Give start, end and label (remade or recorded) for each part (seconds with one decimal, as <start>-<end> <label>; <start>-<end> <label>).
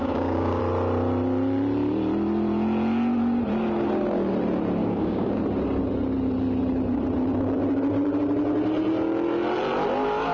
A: 0.0-0.6 remade; 0.6-4.8 recorded; 4.8-5.4 remade; 5.4-10.3 recorded